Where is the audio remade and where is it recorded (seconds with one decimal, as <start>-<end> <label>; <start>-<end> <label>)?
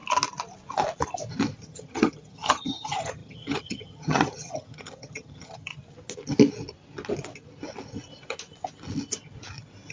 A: 0.0-1.6 recorded; 1.6-5.7 remade; 5.7-9.9 recorded